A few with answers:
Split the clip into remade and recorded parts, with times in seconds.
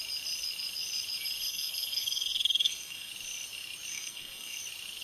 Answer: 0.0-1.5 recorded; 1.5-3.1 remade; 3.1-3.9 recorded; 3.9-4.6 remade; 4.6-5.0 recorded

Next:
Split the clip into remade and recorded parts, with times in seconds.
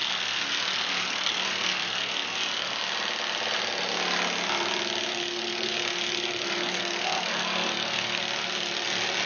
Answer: 0.0-2.7 remade; 2.7-5.1 recorded; 5.1-8.2 remade; 8.2-9.3 recorded